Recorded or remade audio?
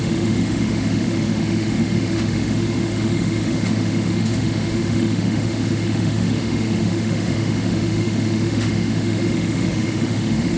remade